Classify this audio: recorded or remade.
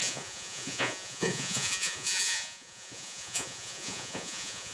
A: remade